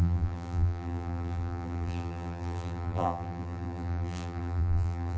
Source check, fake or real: fake